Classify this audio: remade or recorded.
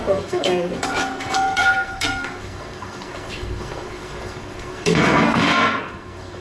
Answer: remade